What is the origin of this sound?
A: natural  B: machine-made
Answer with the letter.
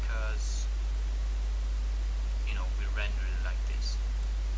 A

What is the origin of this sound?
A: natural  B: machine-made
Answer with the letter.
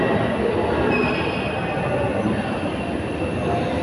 A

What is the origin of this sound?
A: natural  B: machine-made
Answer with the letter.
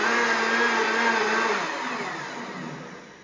A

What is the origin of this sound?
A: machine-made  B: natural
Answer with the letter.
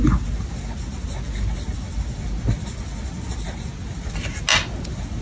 B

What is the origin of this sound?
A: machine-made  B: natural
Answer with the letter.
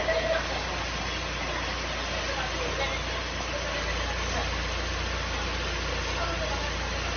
B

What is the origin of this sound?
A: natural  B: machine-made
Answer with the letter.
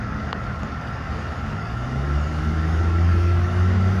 B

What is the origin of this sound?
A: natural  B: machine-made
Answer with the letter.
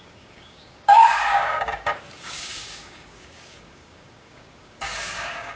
B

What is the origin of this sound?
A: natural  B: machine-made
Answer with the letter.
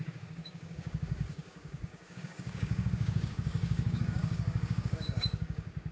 B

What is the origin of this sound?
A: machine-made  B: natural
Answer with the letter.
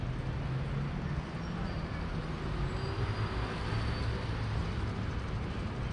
B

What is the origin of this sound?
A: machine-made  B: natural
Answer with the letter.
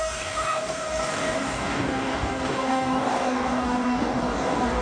A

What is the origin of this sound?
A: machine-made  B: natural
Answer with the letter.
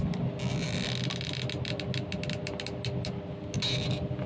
B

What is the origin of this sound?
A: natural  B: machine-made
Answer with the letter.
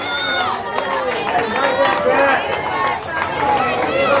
A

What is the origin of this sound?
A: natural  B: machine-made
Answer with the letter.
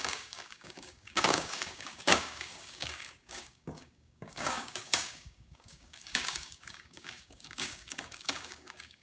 B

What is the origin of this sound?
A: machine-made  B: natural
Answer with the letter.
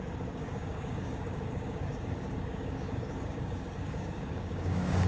A